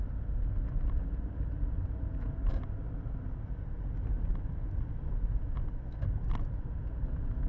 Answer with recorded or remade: recorded